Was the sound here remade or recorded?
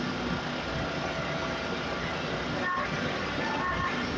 recorded